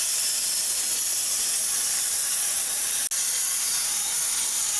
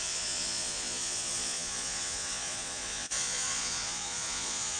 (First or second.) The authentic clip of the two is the first